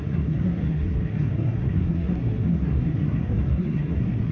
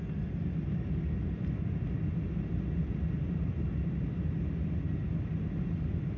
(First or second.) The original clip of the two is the second